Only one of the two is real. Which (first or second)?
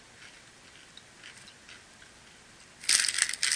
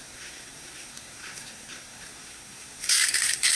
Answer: first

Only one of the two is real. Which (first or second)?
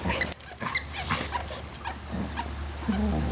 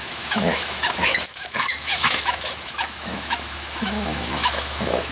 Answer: first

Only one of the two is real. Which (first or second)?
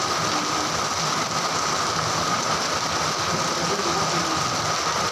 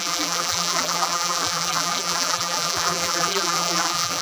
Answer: first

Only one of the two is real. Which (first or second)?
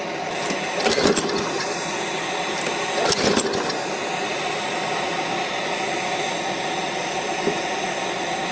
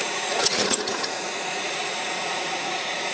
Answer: first